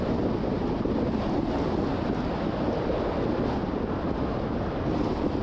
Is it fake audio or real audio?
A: real